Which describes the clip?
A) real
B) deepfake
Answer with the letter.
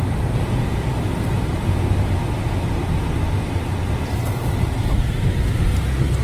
A